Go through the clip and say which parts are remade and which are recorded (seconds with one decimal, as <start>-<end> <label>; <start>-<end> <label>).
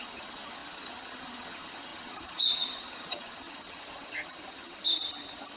0.0-5.6 remade